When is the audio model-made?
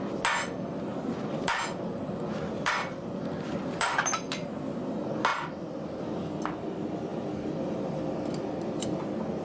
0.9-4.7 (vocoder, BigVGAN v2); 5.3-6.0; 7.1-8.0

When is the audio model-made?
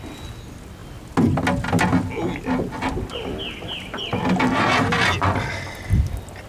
none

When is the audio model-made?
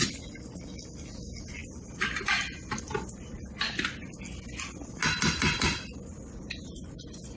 none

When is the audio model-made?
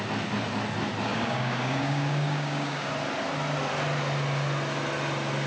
1.1-2.9 (codec, DAC)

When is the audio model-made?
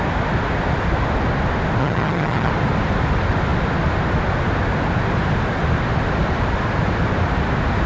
1.8-2.5 (vocoder, HiFi-GAN)